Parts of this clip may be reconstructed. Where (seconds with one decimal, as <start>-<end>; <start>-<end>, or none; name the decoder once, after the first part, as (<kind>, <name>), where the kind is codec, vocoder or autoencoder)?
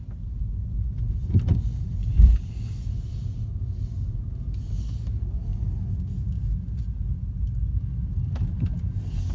none